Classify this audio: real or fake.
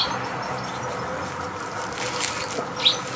real